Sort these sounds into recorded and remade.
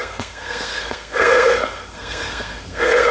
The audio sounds remade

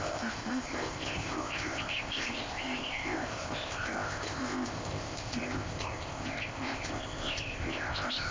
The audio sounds remade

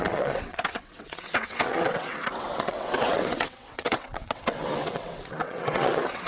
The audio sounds remade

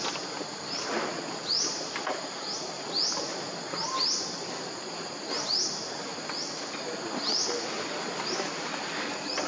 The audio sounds recorded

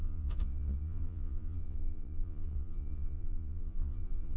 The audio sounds remade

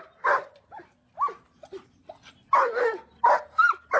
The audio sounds recorded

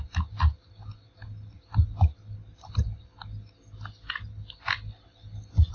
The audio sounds recorded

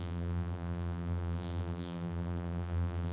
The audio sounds remade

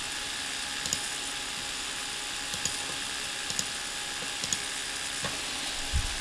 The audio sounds recorded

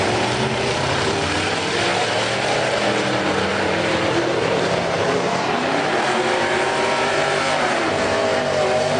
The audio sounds remade